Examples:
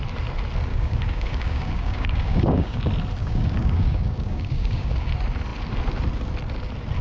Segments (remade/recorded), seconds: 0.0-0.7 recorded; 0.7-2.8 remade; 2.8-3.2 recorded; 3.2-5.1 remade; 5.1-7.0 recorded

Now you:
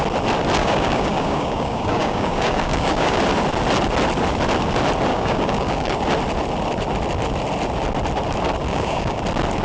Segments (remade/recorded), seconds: 0.0-0.6 recorded; 0.6-3.2 remade; 3.2-5.1 recorded; 5.1-6.0 remade; 6.0-8.7 recorded; 8.7-9.2 remade; 9.2-9.6 recorded

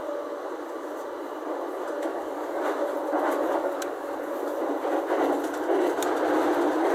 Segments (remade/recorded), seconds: 0.0-2.1 recorded; 2.1-2.6 remade; 2.6-3.4 recorded; 3.4-4.3 remade; 4.3-6.9 recorded

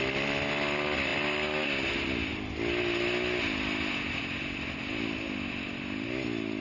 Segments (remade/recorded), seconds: 0.0-6.6 recorded

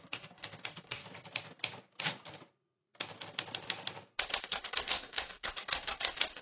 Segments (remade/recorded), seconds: 0.0-1.0 remade; 1.0-4.4 recorded; 4.4-6.4 remade